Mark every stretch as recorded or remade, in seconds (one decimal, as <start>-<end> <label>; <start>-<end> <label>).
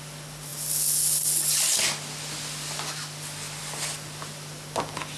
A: 0.0-5.2 recorded